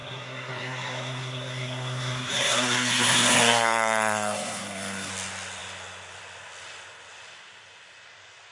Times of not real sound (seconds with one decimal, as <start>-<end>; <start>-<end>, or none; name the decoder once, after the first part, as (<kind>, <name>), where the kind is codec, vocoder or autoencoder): 0.0-5.1 (codec, SNAC)